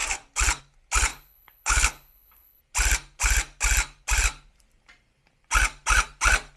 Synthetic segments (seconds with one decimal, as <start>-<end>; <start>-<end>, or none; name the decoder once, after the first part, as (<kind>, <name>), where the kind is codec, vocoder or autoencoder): 1.1-2.6 (codec, HILCodec)